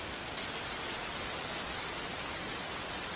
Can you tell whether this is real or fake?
real